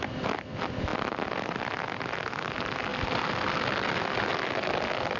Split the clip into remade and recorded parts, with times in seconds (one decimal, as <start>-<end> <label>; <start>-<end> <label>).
0.0-5.2 recorded